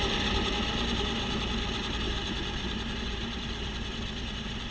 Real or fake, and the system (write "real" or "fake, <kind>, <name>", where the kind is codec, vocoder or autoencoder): real